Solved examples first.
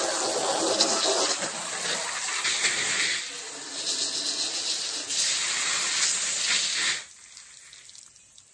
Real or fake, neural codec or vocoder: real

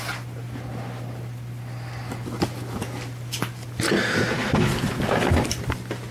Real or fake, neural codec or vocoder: real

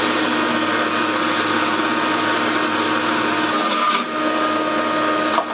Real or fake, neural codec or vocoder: real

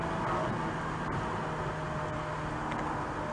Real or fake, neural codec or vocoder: real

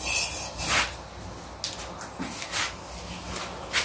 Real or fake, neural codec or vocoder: real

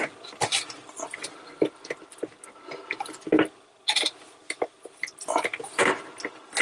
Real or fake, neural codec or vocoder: real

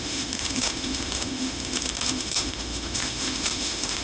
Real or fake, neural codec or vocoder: fake, autoencoder, DAC-VAE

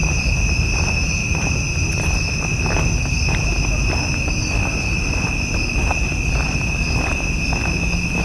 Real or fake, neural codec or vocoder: real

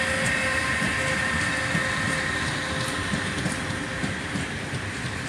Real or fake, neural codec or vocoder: real